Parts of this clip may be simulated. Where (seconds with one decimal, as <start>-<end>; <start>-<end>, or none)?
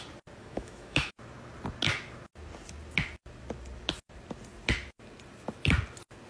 0.4-1.1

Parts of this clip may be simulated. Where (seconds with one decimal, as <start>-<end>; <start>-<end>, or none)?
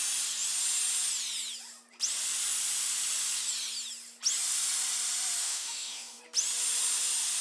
5.4-6.2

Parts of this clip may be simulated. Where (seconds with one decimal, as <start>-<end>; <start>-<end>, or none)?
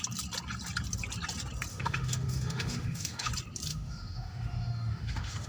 1.7-3.3; 3.7-5.5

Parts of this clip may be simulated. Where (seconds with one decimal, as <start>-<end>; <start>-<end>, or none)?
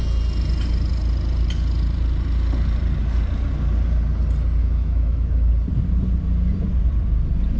4.6-5.5